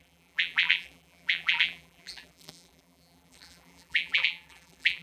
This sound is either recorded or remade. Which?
remade